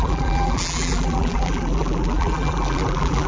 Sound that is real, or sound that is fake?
fake